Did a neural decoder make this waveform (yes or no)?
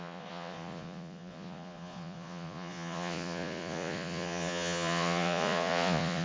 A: yes